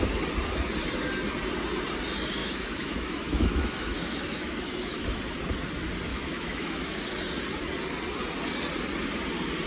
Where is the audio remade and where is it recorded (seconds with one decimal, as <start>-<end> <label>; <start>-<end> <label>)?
0.0-2.4 recorded; 2.4-5.2 remade; 5.2-6.1 recorded; 6.1-7.0 remade; 7.0-9.7 recorded